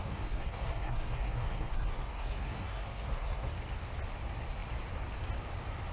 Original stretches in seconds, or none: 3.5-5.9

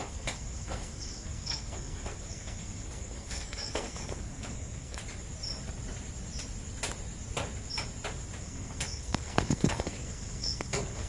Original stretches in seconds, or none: 5.0-8.4

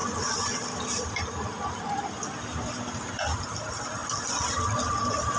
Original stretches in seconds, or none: 0.0-5.4